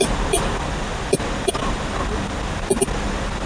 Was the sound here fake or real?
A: real